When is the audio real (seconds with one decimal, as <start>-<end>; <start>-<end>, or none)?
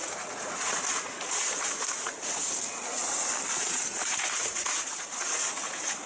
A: 2.4-3.6